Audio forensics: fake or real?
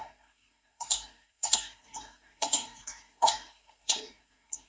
fake